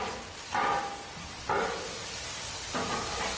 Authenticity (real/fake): fake